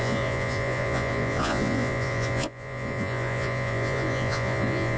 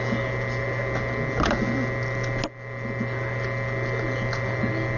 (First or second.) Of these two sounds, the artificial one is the first